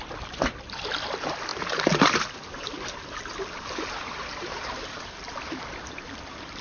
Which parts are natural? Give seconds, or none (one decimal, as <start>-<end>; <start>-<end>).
1.5-5.5